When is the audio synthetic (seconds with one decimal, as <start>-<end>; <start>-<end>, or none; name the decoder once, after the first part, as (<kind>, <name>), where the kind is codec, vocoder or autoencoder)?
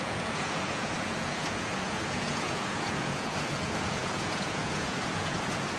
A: 0.0-5.8 (vocoder, Vocos)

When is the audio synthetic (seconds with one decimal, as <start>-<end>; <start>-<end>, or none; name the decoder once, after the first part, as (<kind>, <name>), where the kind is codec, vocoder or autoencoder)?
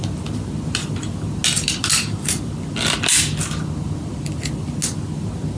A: none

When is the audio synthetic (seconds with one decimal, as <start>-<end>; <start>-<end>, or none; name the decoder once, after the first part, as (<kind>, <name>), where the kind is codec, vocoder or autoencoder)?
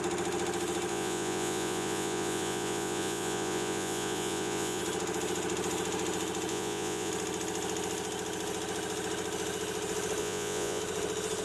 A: 0.9-4.8 (vocoder, Vocos); 6.5-7.1; 10.2-10.8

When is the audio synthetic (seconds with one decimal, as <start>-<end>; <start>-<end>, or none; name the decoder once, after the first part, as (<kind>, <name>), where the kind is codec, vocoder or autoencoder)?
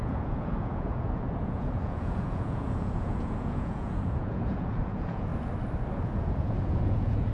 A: 0.0-5.3 (vocoder, Vocos); 6.2-7.3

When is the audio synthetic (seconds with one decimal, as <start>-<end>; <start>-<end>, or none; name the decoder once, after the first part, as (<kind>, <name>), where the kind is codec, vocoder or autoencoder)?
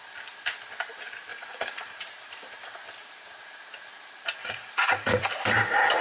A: 1.3-2.0 (vocoder, Vocos); 4.4-5.3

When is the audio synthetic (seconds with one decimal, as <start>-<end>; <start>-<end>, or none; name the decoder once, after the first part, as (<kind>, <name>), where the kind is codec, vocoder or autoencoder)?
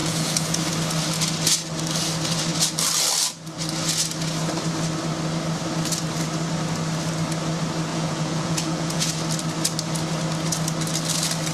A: 0.0-0.6 (vocoder, Vocos); 7.9-9.1